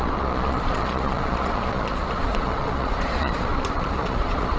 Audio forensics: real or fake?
fake